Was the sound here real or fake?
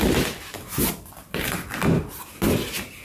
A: real